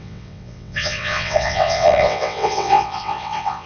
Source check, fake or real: fake